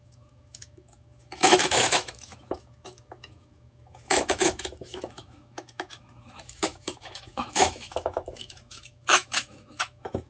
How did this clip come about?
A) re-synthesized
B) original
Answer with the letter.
A